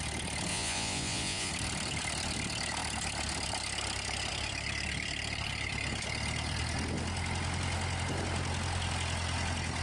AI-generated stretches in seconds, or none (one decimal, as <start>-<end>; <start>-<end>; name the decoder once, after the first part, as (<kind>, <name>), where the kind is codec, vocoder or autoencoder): 0.5-1.5 (vocoder, Vocos)